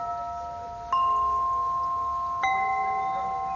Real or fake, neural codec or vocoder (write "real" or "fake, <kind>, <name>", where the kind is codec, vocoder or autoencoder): real